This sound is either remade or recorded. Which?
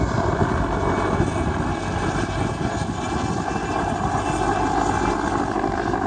recorded